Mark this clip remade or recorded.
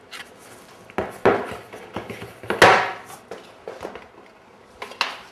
recorded